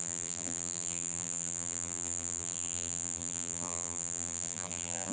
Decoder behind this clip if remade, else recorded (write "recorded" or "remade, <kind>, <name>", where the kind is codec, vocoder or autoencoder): remade, vocoder, BigVGAN v2